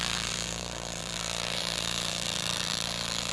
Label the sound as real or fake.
fake